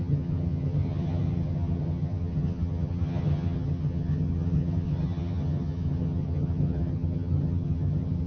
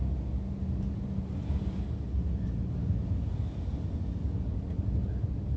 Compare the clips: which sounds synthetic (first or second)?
first